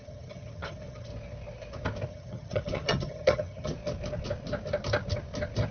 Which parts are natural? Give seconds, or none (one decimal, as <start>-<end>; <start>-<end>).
1.1-2.1; 3.7-5.7